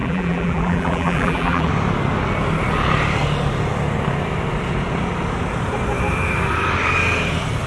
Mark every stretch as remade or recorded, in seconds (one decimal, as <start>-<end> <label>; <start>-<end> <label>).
0.0-1.7 remade; 1.7-7.7 recorded

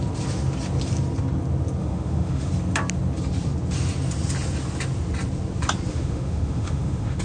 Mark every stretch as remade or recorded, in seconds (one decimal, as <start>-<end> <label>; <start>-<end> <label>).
0.0-1.8 recorded; 1.8-2.5 remade; 2.5-5.9 recorded; 5.9-7.2 remade

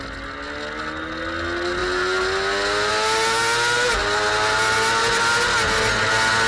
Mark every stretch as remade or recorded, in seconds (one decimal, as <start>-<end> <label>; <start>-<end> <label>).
0.0-6.5 recorded

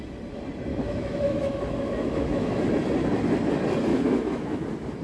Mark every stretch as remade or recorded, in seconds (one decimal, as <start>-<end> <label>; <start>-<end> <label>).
0.0-0.7 recorded; 0.7-2.7 remade; 2.7-3.9 recorded; 3.9-4.6 remade; 4.6-5.0 recorded

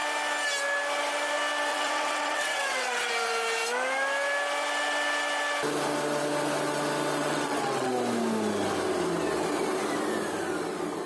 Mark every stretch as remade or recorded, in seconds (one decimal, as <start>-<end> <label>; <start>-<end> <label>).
0.0-1.7 recorded; 1.7-3.1 remade; 3.1-7.2 recorded; 7.2-7.9 remade; 7.9-11.1 recorded

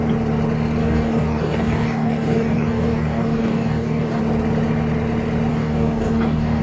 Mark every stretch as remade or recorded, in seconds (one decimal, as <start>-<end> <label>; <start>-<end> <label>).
0.0-0.8 recorded; 0.8-4.2 remade; 4.2-5.5 recorded; 5.5-6.6 remade